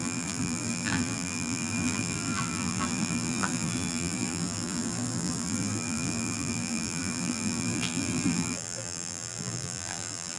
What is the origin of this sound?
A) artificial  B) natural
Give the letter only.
A